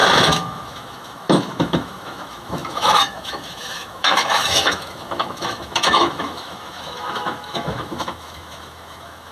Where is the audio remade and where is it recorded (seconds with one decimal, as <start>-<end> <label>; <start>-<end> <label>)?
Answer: 0.0-9.3 remade